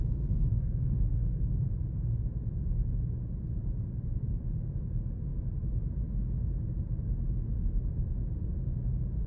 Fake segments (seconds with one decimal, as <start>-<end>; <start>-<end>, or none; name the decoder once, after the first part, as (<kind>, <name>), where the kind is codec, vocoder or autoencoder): 0.5-1.5 (codec, SNAC)